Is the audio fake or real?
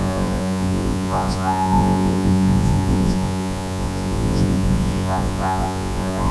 fake